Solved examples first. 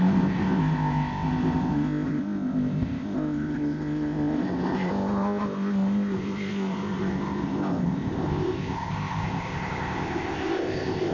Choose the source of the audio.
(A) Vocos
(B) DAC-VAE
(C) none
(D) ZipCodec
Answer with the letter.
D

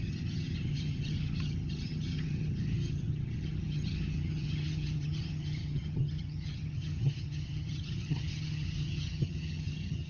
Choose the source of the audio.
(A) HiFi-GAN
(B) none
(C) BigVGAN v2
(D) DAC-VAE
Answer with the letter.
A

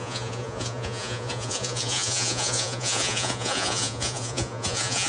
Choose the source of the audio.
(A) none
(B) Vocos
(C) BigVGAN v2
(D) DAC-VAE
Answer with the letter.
B